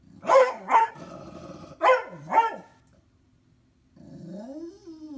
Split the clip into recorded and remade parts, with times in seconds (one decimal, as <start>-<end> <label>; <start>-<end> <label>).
0.0-0.4 recorded; 0.4-0.9 remade; 0.9-5.2 recorded

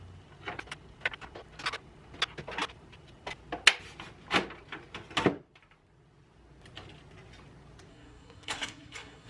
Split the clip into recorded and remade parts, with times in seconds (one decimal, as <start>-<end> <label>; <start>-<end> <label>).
0.0-7.9 recorded; 7.9-9.3 remade

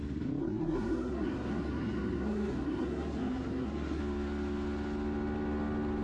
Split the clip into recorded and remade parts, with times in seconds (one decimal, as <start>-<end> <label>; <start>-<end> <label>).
0.0-0.4 recorded; 0.4-4.0 remade; 4.0-6.0 recorded

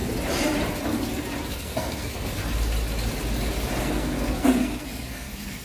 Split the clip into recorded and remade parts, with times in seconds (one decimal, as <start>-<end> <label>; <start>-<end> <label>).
0.0-1.5 recorded; 1.5-2.4 remade; 2.4-3.8 recorded; 3.8-5.6 remade